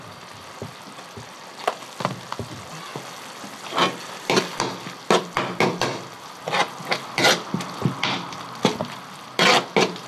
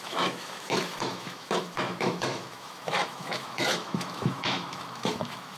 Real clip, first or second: first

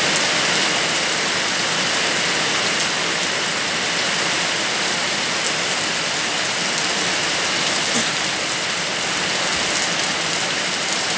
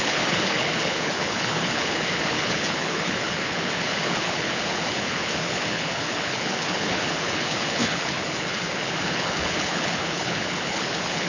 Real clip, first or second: first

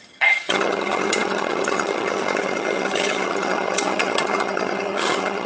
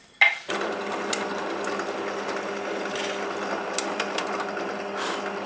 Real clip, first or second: second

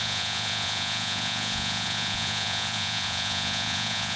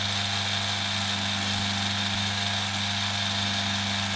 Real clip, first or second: second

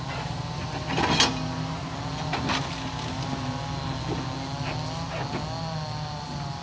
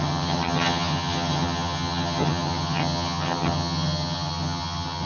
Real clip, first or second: first